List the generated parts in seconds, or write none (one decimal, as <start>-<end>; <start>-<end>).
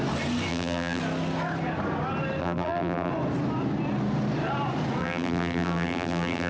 0.5-1.0; 2.4-3.1; 5.0-6.5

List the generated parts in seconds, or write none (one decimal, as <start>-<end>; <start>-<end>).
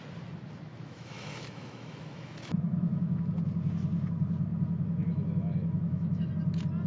0.7-3.2; 4.5-6.3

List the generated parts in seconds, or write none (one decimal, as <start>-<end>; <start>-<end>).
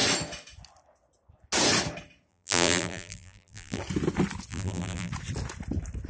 2.3-3.8; 4.5-5.1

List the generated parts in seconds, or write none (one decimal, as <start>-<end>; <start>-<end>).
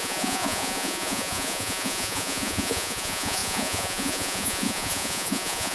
0.0-5.7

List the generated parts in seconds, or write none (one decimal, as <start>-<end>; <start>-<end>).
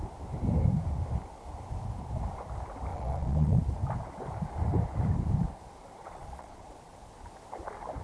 2.9-3.6; 6.0-6.9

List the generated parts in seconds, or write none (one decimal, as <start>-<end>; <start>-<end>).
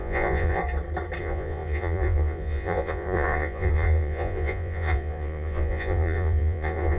0.0-0.6; 1.2-7.0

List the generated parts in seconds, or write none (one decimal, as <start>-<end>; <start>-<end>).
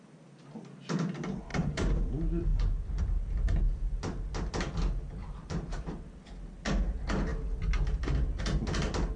1.5-2.1; 2.5-3.0; 5.2-6.0